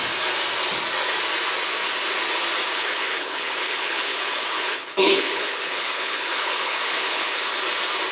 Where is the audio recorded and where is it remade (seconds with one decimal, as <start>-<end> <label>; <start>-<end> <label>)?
0.0-2.7 recorded; 2.7-7.4 remade; 7.4-8.1 recorded